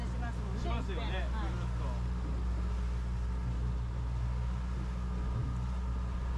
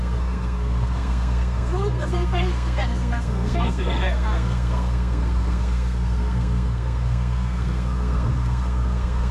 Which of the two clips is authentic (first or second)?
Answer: first